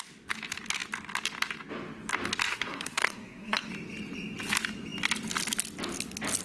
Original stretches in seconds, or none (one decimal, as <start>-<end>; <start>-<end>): 0.0-2.5; 3.7-6.4